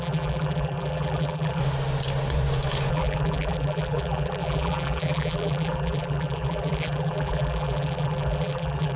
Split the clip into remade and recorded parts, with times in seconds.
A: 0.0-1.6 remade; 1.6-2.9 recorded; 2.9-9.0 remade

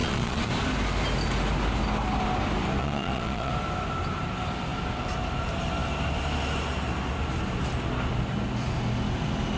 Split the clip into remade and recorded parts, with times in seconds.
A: 0.0-0.5 remade; 0.5-2.8 recorded; 2.8-3.5 remade; 3.5-9.6 recorded

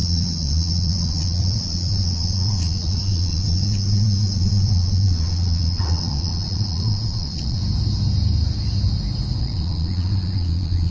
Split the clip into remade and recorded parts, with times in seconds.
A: 0.0-7.6 remade; 7.6-9.4 recorded; 9.4-10.9 remade

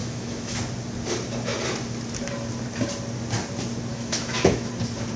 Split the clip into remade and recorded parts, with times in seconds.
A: 0.0-0.6 remade; 0.6-3.9 recorded; 3.9-4.7 remade; 4.7-5.2 recorded

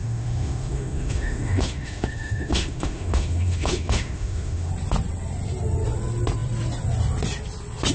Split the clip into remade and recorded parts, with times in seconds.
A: 0.0-4.7 remade; 4.7-7.9 recorded

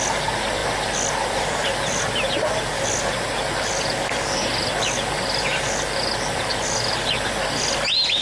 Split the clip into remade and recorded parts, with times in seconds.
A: 0.0-8.2 recorded

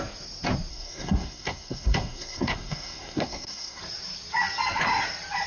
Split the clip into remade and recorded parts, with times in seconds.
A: 0.0-0.7 recorded; 0.7-3.8 remade; 3.8-5.5 recorded

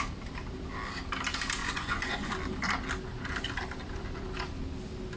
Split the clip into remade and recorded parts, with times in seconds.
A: 0.0-1.6 recorded; 1.6-2.3 remade; 2.3-5.2 recorded